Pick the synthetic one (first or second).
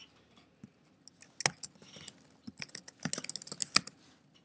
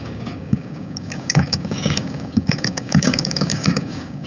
second